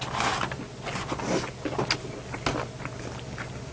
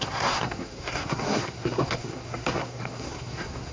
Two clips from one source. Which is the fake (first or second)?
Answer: second